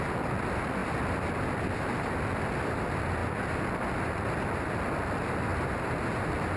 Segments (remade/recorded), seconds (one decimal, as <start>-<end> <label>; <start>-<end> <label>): 0.0-6.6 recorded